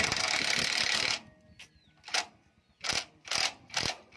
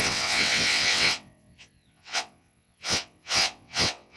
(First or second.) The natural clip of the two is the first